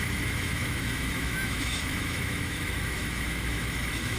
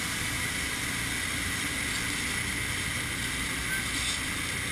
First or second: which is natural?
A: second